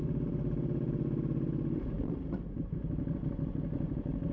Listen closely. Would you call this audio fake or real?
fake